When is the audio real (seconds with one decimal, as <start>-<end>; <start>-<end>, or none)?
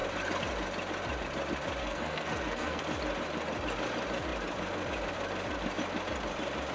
0.0-1.8; 2.8-6.7